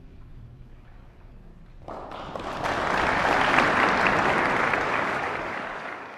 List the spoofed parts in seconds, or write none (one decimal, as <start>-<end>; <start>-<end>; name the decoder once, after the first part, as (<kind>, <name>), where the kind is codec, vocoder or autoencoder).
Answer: 0.0-1.5 (codec, DAC); 4.9-6.2

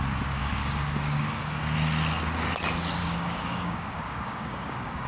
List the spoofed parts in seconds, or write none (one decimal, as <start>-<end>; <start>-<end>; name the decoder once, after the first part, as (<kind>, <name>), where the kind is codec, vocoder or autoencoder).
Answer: 0.4-1.6 (codec, DAC); 3.0-5.1